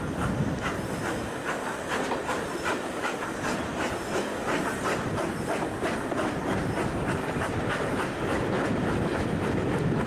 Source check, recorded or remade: recorded